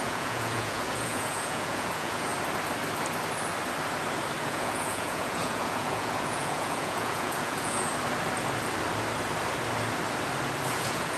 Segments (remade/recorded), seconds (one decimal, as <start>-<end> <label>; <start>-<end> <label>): 0.0-2.3 remade; 2.3-4.4 recorded; 4.4-7.9 remade; 7.9-10.7 recorded; 10.7-11.2 remade